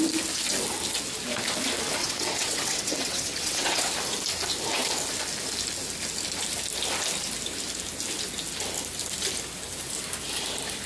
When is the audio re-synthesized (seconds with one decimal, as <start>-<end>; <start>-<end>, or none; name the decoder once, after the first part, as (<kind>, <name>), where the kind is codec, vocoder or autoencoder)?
2.0-3.9 (vocoder, WaveNeXt)